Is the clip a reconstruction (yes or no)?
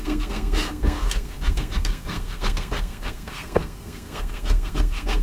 yes